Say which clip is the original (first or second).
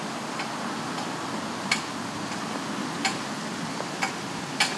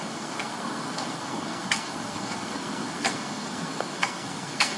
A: first